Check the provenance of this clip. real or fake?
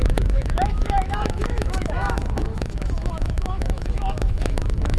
fake